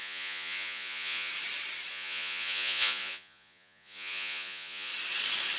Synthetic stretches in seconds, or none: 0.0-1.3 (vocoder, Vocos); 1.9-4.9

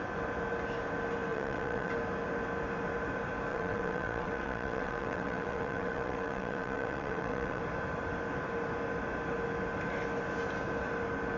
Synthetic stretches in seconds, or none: 1.3-1.9 (vocoder, WaveNeXt); 3.5-7.6

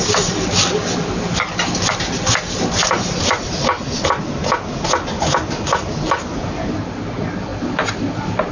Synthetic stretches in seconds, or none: none

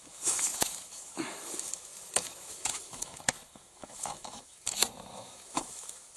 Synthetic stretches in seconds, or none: 0.0-6.2 (autoencoder, DAC-VAE)

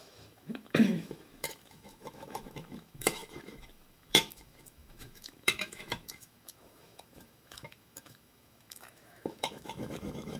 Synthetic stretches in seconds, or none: 0.0-10.4 (autoencoder, DAC-VAE)

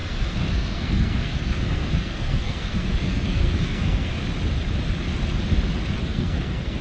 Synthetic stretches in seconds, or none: 0.0-4.2 (codec, SNAC); 6.0-6.8